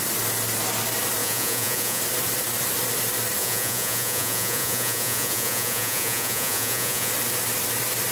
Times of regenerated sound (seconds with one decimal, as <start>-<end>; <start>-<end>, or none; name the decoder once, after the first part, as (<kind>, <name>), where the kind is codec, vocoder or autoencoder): 1.2-2.0 (vocoder, Vocos); 3.4-7.1